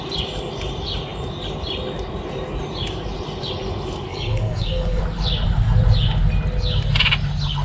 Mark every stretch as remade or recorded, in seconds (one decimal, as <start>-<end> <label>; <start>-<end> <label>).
0.0-4.1 recorded; 4.1-5.0 remade; 5.0-7.6 recorded